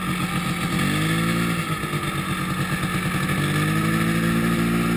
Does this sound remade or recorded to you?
recorded